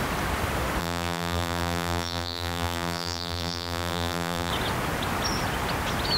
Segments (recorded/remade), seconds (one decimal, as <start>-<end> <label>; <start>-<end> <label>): 0.0-0.8 recorded; 0.8-4.5 remade; 4.5-6.2 recorded